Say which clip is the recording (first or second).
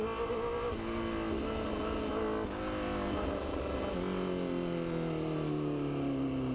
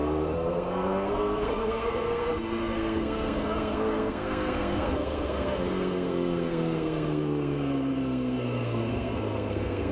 first